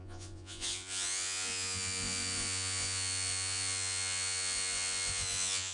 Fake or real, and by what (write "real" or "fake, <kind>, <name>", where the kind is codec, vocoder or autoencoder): fake, vocoder, Vocos